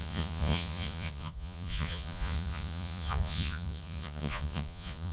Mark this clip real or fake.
fake